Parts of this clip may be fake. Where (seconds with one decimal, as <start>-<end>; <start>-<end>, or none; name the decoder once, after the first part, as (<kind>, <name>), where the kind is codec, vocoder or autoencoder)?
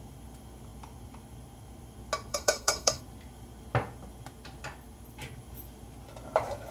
2.3-3.0 (codec, SNAC)